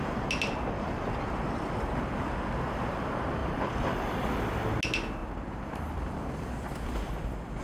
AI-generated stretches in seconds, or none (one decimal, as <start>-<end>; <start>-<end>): 3.4-4.4; 5.2-7.1